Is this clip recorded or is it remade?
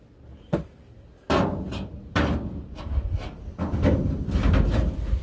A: recorded